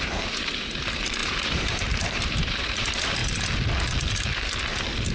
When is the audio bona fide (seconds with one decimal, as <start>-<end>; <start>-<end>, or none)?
3.2-5.1